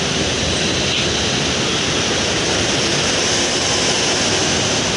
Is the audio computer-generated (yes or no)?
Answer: no